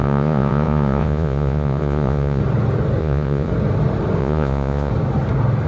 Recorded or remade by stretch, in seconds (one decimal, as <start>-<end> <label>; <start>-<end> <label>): 0.0-2.4 remade; 2.4-3.0 recorded; 3.0-3.5 remade; 3.5-4.2 recorded; 4.2-4.9 remade; 4.9-5.7 recorded